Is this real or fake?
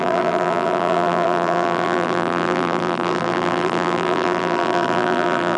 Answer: fake